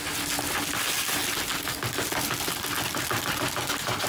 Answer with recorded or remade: recorded